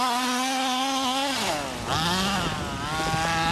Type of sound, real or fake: real